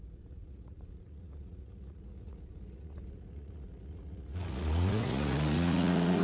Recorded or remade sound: remade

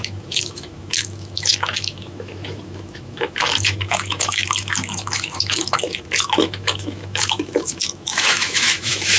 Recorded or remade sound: remade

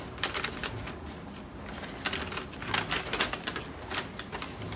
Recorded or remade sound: recorded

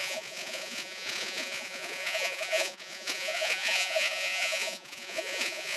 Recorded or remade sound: remade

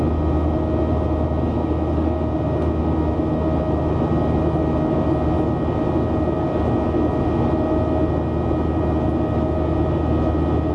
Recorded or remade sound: recorded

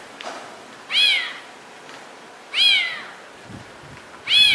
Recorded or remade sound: recorded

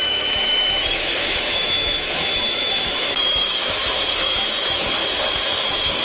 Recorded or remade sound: remade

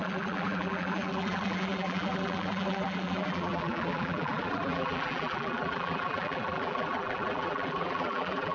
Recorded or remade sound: remade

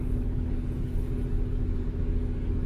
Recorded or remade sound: remade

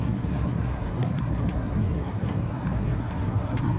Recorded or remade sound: remade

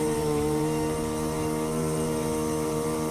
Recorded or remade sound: remade